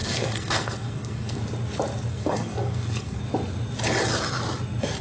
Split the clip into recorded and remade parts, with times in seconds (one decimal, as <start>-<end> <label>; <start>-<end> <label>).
0.0-1.4 remade; 1.4-2.1 recorded; 2.1-3.2 remade; 3.2-5.0 recorded